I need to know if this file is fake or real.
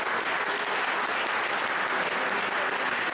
real